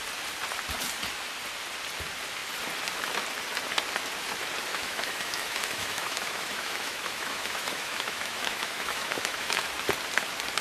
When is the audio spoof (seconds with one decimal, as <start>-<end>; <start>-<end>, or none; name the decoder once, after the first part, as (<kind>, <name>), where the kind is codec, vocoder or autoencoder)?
4.7-9.7 (autoencoder, DAC-VAE)